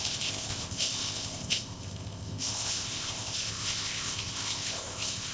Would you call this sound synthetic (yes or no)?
yes